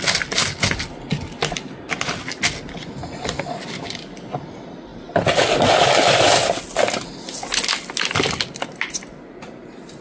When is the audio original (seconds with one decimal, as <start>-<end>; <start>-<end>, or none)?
0.0-10.0